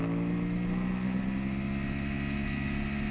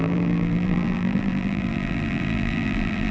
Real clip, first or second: first